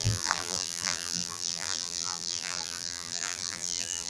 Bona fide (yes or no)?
no